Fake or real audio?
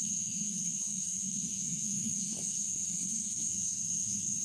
fake